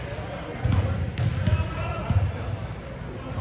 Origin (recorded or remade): recorded